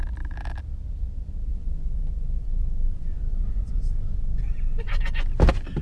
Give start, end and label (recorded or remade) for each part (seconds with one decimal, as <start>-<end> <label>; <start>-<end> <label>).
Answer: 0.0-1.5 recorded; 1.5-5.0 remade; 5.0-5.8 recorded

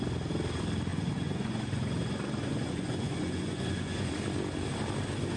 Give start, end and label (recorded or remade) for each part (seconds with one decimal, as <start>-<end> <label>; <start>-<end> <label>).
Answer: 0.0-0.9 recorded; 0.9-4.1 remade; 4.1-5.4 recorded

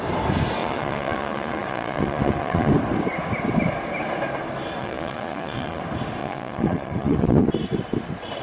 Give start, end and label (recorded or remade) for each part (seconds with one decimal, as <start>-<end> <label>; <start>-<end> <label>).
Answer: 0.0-0.6 recorded; 0.6-2.7 remade; 2.7-4.8 recorded; 4.8-5.8 remade; 5.8-6.2 recorded; 6.2-7.5 remade; 7.5-8.4 recorded